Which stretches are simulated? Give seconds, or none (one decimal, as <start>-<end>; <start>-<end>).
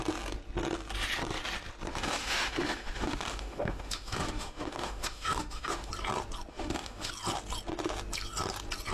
1.9-5.9; 6.5-7.1